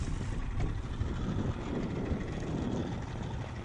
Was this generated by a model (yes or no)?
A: no